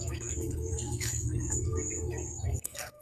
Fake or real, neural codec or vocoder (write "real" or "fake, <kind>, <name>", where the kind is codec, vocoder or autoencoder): fake, codec, SNAC